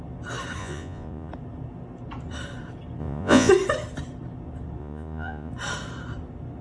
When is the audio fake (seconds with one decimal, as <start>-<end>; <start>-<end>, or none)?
0.6-1.3; 3.0-3.5; 4.8-5.5